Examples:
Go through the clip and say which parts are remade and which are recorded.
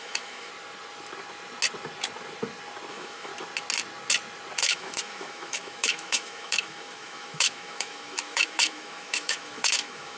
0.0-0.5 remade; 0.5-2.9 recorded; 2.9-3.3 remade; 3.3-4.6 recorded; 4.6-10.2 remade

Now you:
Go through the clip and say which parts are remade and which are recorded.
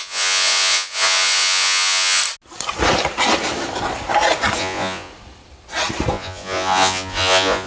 0.0-2.2 remade; 2.2-4.6 recorded; 4.6-5.1 remade; 5.1-6.1 recorded; 6.1-7.7 remade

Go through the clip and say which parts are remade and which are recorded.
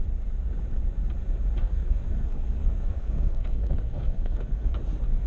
0.0-1.6 recorded; 1.6-4.8 remade; 4.8-5.3 recorded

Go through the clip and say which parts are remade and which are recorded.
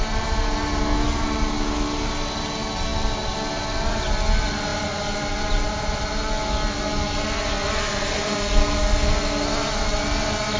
0.0-10.6 recorded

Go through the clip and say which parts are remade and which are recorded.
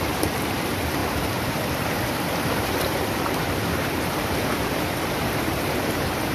0.0-6.3 remade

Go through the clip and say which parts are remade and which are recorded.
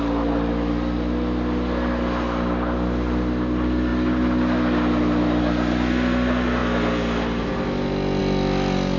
0.0-9.0 recorded